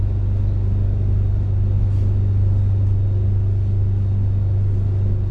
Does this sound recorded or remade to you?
recorded